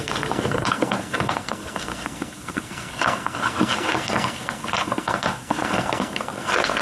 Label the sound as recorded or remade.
remade